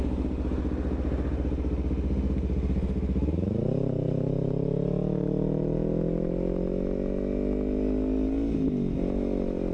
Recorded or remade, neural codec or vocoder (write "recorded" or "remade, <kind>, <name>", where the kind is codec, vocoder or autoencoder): recorded